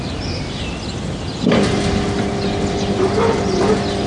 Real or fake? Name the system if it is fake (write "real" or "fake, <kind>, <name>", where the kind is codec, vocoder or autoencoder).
real